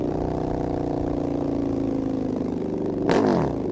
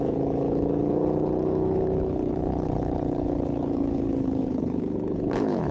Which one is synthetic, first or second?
second